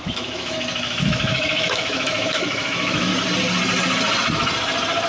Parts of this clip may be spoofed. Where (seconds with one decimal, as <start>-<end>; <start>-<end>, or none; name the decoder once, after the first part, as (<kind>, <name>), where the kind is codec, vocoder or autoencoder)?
0.0-3.1 (autoencoder, DAC-VAE)